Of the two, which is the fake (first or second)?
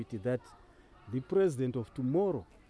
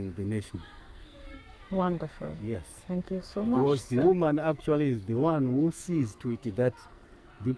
second